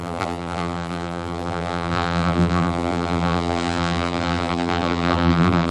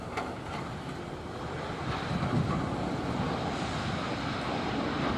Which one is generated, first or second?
first